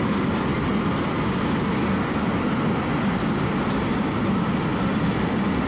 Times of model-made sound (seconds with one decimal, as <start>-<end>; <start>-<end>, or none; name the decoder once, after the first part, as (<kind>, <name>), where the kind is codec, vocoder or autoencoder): 4.7-5.3 (vocoder, BigVGAN v2)